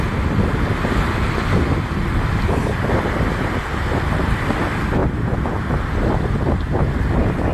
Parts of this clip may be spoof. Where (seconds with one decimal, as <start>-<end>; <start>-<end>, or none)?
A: none